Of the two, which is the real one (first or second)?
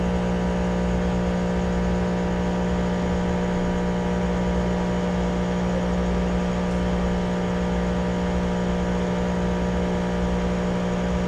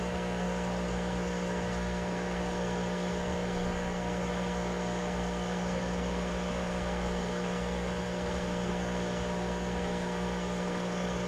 first